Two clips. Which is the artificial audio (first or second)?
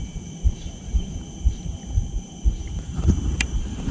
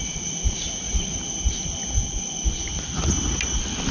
first